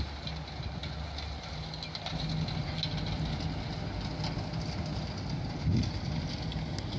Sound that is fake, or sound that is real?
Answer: real